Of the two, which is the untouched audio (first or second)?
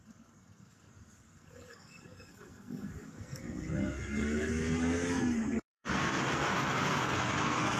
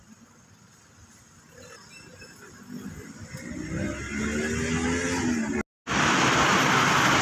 second